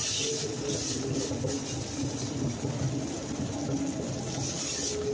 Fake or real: real